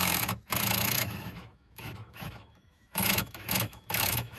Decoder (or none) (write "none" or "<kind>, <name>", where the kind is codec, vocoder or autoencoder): autoencoder, DAC-VAE